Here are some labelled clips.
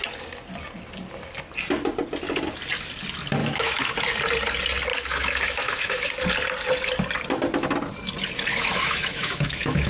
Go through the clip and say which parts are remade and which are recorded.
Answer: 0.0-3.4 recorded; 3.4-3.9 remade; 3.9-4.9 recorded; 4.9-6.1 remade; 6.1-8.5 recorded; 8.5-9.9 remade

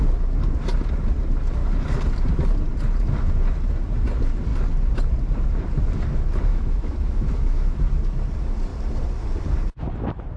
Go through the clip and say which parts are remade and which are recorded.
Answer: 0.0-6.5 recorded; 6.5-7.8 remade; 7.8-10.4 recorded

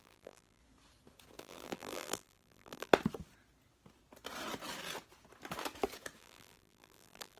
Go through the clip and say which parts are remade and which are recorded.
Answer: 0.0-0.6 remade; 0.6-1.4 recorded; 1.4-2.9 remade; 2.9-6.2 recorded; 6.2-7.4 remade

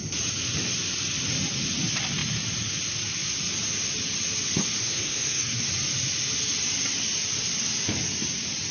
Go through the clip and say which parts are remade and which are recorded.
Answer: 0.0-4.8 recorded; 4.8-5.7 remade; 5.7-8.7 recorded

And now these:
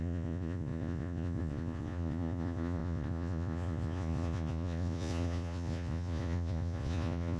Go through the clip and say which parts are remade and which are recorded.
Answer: 0.0-7.4 remade

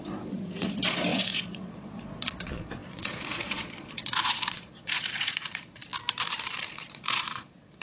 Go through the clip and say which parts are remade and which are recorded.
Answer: 0.0-5.9 remade; 5.9-6.7 recorded; 6.7-7.8 remade